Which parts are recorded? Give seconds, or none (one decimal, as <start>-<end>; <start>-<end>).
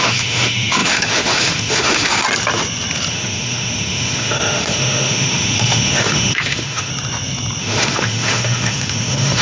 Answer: 2.2-3.1; 6.9-7.6